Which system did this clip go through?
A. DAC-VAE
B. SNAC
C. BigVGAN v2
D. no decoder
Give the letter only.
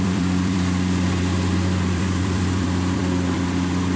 C